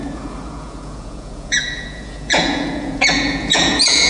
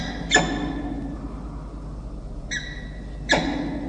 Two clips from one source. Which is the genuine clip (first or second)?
second